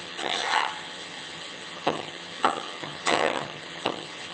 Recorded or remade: remade